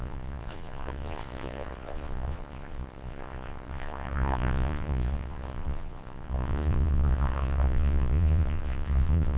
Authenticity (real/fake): fake